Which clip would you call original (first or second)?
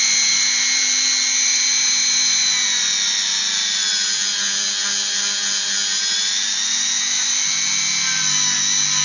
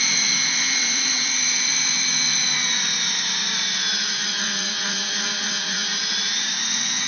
first